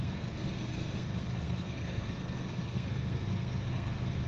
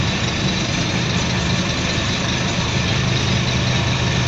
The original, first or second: second